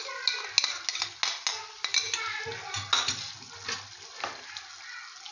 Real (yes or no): yes